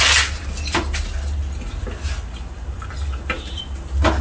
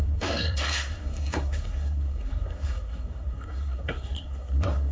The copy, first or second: second